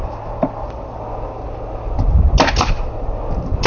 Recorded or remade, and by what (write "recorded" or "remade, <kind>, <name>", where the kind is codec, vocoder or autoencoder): recorded